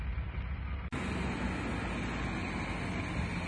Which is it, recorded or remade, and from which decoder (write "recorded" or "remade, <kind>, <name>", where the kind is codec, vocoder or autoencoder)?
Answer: recorded